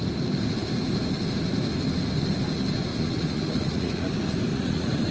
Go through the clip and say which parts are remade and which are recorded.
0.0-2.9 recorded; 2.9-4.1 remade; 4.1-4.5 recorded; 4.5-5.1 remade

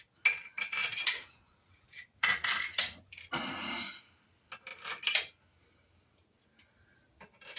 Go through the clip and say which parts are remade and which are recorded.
0.0-0.8 recorded; 0.8-3.1 remade; 3.1-7.6 recorded

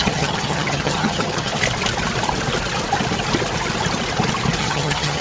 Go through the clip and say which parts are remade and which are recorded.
0.0-1.5 remade; 1.5-4.6 recorded; 4.6-5.2 remade

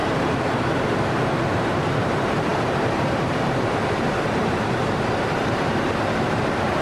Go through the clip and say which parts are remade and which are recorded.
0.0-6.8 remade

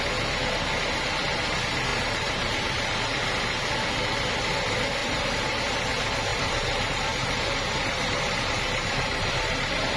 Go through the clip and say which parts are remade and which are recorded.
0.0-1.9 recorded; 1.9-3.0 remade; 3.0-5.0 recorded; 5.0-5.6 remade; 5.6-6.3 recorded; 6.3-10.0 remade

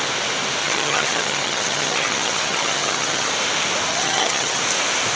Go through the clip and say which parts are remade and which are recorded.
0.0-0.6 recorded; 0.6-3.3 remade; 3.3-3.9 recorded; 3.9-4.6 remade; 4.6-5.2 recorded

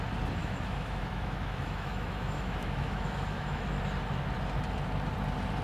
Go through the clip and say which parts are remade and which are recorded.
0.0-0.4 recorded; 0.4-3.8 remade; 3.8-5.6 recorded

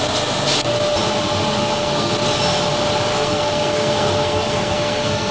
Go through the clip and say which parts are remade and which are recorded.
0.0-1.6 recorded; 1.6-2.1 remade; 2.1-3.1 recorded; 3.1-5.3 remade